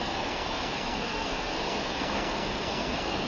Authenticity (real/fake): fake